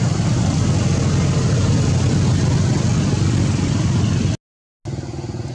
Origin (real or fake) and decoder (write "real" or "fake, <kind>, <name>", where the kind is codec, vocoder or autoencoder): real